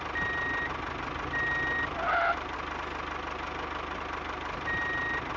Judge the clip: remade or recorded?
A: recorded